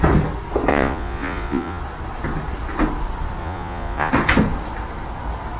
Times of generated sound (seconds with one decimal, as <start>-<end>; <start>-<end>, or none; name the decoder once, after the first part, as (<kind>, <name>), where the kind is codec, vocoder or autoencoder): 0.7-1.8 (vocoder, Vocos); 3.4-4.1

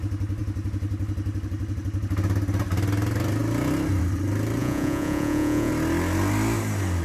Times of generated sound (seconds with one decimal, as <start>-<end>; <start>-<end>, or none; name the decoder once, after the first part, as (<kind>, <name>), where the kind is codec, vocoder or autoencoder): 4.6-5.7 (vocoder, Vocos)

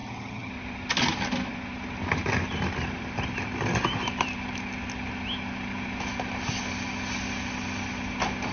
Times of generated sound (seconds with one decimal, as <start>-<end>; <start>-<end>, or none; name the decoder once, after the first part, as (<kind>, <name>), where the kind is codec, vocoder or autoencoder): 0.0-0.5 (vocoder, HiFi-GAN)

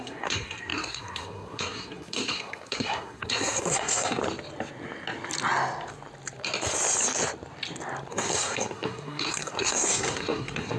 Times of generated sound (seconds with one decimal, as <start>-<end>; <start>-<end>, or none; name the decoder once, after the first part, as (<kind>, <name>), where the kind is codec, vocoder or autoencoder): 0.0-4.2 (codec, SNAC); 8.1-10.8

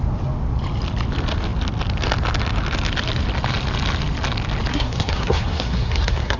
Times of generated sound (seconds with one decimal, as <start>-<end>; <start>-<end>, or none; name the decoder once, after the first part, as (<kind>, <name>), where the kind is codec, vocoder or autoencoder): 4.7-6.4 (codec, SNAC)